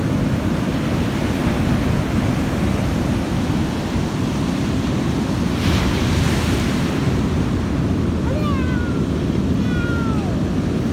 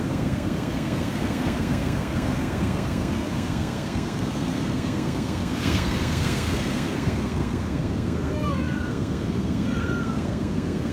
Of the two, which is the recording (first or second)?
first